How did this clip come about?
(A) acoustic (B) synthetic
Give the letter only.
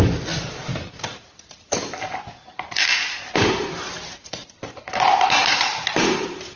B